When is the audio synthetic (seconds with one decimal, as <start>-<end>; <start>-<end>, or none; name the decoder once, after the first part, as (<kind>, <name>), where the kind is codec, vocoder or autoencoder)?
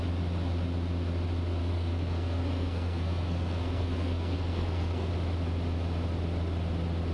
1.6-5.1 (codec, SNAC)